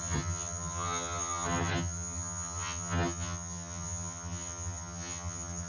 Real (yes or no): no